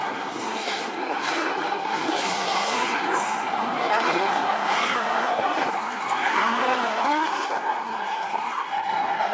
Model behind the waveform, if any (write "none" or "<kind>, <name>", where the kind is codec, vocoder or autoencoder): codec, SNAC